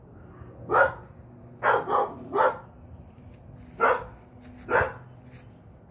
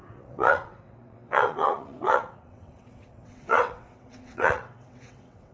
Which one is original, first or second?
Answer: first